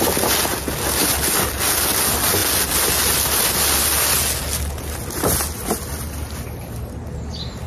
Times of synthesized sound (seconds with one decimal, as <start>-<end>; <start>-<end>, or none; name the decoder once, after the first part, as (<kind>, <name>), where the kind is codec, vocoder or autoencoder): none